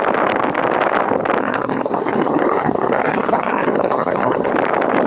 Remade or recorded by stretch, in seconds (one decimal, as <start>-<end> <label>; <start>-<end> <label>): 0.0-1.4 recorded; 1.4-4.5 remade; 4.5-5.1 recorded